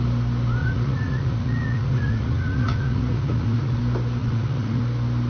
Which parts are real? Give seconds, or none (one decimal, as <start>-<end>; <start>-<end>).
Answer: 0.0-0.6; 3.8-4.2; 4.8-5.3